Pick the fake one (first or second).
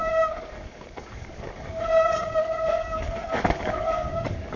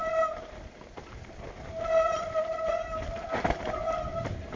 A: first